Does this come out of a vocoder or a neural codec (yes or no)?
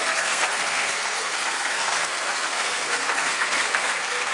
yes